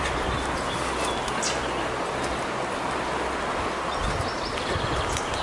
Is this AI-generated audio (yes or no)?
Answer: no